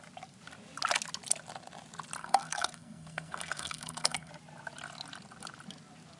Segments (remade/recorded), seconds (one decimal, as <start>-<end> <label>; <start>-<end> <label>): 0.0-2.2 recorded; 2.2-4.3 remade; 4.3-6.2 recorded